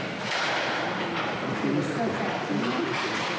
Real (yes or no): yes